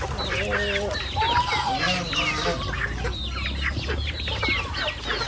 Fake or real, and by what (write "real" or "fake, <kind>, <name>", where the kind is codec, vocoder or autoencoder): real